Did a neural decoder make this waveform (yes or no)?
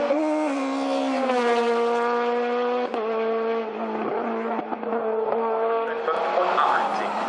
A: no